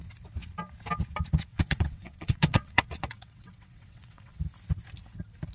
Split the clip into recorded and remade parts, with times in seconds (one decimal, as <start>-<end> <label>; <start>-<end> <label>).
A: 0.0-1.5 recorded; 1.5-4.4 remade; 4.4-5.5 recorded